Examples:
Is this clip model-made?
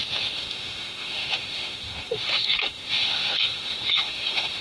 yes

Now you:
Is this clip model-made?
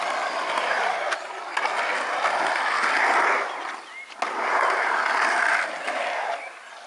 no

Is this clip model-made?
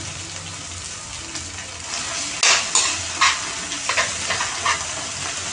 no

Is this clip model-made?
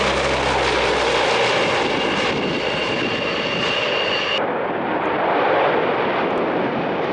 no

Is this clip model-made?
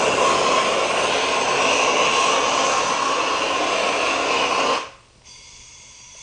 no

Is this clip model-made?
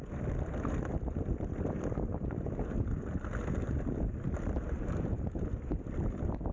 yes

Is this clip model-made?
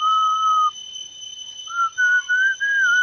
no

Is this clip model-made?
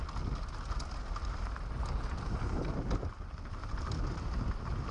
no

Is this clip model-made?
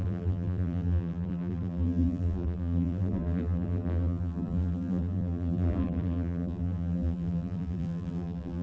yes